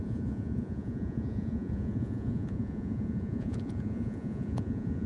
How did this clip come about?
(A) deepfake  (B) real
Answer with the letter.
A